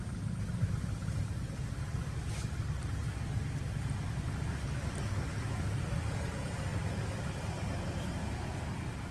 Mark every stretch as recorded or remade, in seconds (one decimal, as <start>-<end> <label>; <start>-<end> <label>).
0.0-9.1 recorded